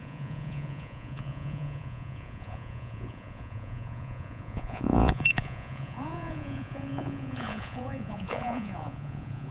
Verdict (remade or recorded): remade